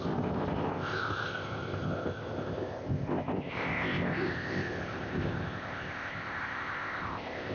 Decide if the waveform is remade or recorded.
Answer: remade